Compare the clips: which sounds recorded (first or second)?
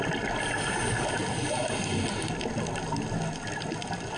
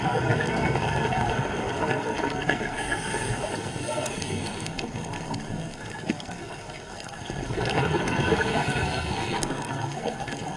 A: first